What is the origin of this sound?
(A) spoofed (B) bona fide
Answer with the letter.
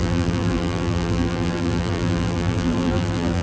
A